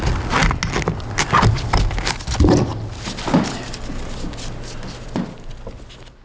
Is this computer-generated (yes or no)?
no